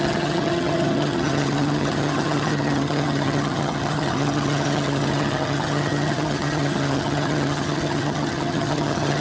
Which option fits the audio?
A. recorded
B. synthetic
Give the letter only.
B